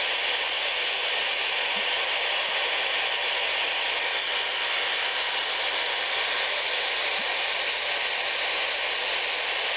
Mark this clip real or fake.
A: real